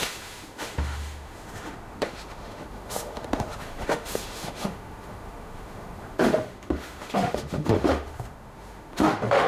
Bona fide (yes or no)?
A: no